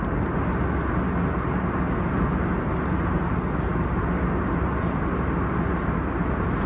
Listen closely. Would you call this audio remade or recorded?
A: recorded